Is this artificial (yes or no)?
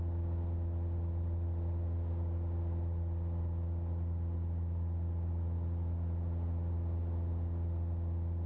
no